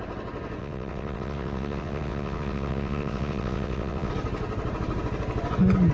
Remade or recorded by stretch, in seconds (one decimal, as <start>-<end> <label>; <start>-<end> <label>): 0.0-0.6 recorded; 0.6-4.1 remade; 4.1-5.9 recorded